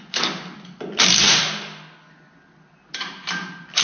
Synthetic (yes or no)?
no